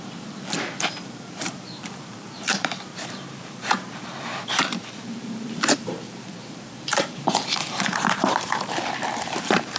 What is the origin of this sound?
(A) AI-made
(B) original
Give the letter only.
A